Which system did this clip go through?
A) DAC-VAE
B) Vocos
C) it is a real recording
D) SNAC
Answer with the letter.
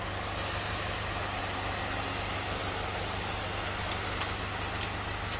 C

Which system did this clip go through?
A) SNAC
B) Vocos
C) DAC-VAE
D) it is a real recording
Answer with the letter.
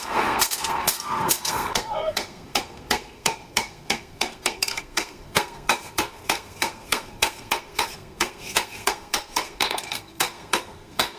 A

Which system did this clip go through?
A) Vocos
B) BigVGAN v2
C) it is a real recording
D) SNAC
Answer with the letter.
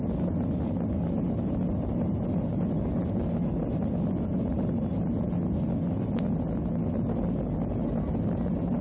C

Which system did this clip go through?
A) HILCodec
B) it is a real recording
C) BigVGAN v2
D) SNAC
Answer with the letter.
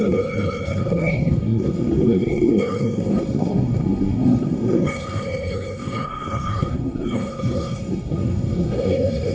D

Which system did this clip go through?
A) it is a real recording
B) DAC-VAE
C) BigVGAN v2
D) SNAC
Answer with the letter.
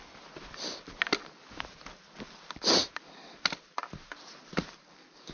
A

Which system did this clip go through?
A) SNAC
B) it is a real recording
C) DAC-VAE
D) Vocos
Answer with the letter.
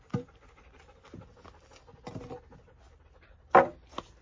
B